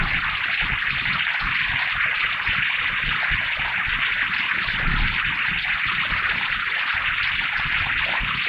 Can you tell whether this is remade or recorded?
recorded